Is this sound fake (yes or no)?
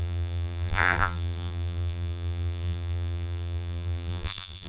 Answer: yes